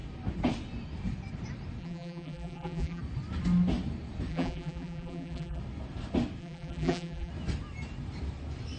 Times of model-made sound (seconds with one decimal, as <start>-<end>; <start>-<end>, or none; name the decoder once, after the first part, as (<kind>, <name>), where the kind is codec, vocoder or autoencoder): 1.8-3.0 (vocoder, BigVGAN v2); 4.3-5.6; 6.4-7.3